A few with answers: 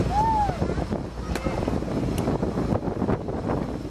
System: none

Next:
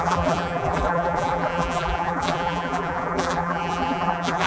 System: vocoder, BigVGAN v2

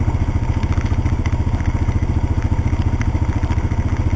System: none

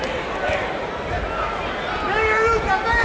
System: none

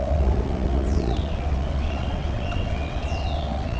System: vocoder, WaveNeXt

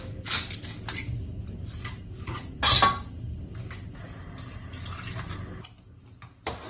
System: none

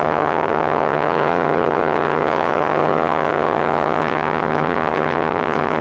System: vocoder, HiFi-GAN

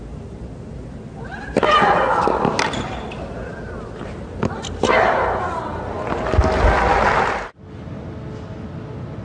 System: none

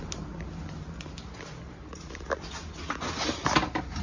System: none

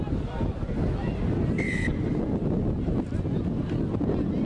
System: none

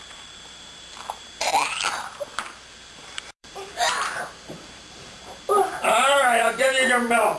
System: vocoder, BigVGAN v2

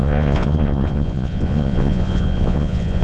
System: vocoder, Vocos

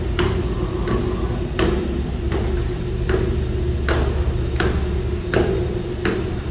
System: none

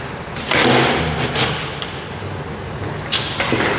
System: none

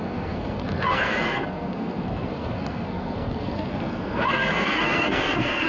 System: codec, SNAC